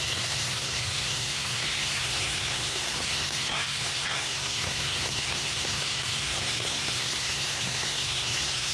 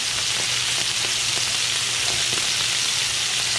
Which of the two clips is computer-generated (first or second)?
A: first